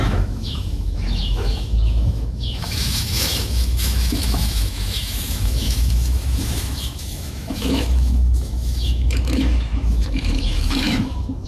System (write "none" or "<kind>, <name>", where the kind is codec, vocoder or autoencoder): autoencoder, DAC-VAE